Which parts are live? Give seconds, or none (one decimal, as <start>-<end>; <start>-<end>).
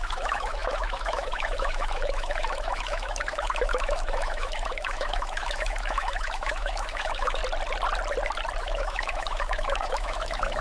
7.4-8.6